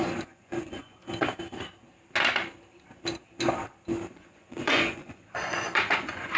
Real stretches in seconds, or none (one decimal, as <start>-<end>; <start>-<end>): 1.0-4.1